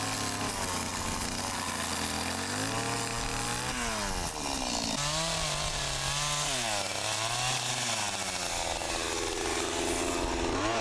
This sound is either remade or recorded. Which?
recorded